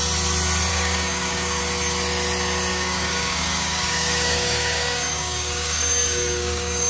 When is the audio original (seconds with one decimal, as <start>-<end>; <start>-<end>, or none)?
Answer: 0.0-0.7; 1.6-2.7